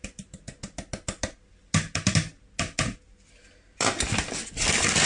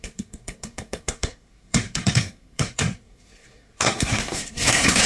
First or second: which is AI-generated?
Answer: second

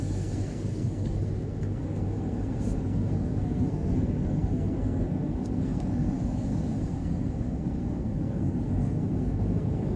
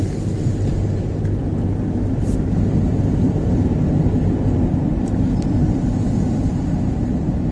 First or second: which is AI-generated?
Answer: first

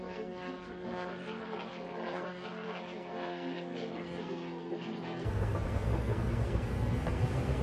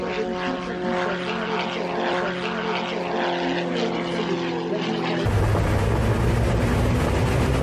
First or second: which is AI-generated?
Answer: first